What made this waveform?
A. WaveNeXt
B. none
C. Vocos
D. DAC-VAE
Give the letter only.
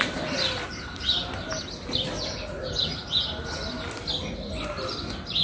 B